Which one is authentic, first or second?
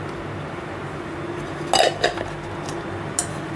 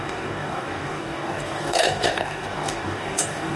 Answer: first